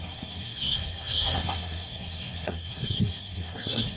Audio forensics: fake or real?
fake